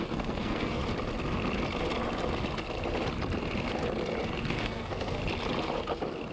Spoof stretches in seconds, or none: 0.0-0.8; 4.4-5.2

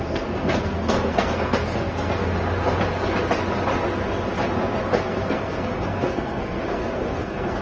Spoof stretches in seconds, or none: 0.0-2.3; 4.9-7.6

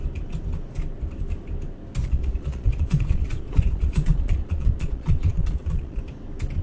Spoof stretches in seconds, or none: 2.0-6.0

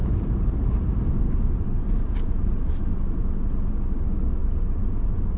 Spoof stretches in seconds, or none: 0.0-3.2; 4.4-5.4

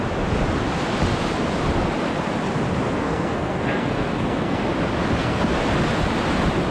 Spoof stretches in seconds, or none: 3.0-4.6; 5.2-5.7